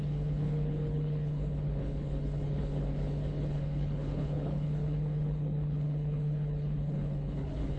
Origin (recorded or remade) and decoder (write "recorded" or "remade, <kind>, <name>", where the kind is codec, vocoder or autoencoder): remade, codec, HILCodec